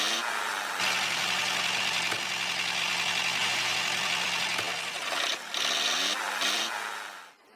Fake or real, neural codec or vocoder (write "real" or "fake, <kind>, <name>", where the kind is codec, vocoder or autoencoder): real